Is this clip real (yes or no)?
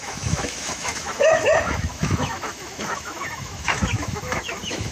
no